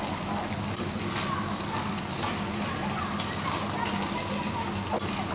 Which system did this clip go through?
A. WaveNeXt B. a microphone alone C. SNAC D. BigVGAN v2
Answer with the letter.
B